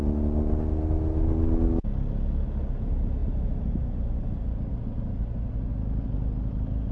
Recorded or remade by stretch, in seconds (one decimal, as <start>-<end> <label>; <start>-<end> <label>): 0.0-6.9 recorded